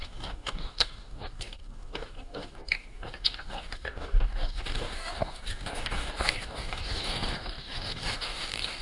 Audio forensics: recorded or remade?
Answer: remade